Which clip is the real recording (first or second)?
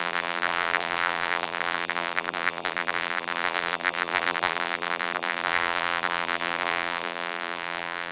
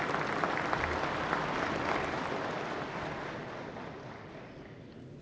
second